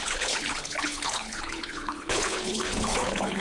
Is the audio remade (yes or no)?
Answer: yes